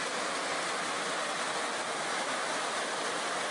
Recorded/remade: recorded